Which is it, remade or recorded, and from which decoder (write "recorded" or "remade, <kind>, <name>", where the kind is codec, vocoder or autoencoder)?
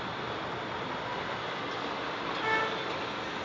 recorded